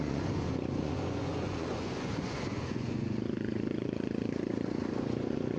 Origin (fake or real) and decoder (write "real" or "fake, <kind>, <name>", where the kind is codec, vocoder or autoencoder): fake, vocoder, Vocos